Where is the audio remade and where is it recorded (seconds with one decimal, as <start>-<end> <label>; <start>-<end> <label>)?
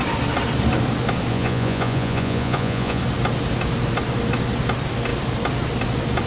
0.0-1.3 recorded; 1.3-3.0 remade; 3.0-6.3 recorded